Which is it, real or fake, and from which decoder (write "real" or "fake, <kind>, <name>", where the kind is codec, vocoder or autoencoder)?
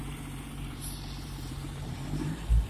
fake, vocoder, BigVGAN v2